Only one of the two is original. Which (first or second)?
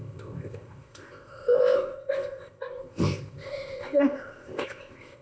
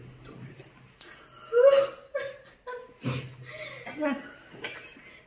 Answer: second